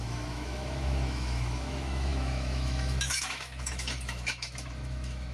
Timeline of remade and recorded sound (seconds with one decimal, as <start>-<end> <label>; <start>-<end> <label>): 0.0-5.3 remade